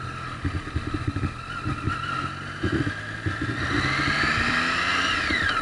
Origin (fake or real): real